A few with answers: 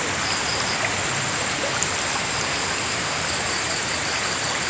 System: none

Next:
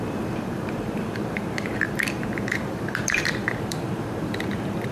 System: vocoder, BigVGAN v2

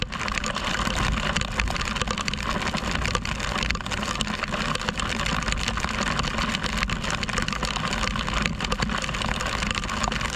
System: none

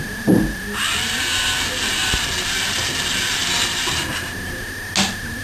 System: none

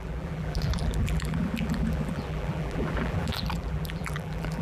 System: vocoder, BigVGAN v2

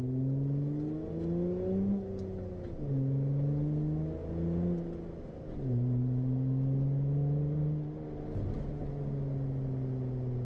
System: none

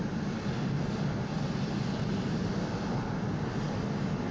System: none